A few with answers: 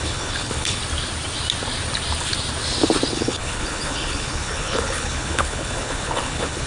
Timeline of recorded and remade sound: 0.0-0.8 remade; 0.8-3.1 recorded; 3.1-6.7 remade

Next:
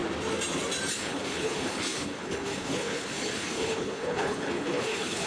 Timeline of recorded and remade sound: 0.0-0.9 recorded; 0.9-5.3 remade

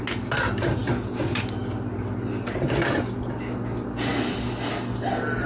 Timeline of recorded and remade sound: 0.0-5.5 recorded

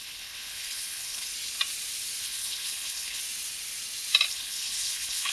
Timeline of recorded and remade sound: 0.0-1.3 remade; 1.3-2.2 recorded; 2.2-3.2 remade; 3.2-4.3 recorded; 4.3-5.3 remade